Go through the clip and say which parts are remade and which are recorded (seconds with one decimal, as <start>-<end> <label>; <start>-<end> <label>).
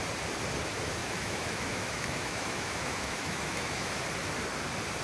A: 0.0-1.0 recorded; 1.0-4.0 remade; 4.0-5.0 recorded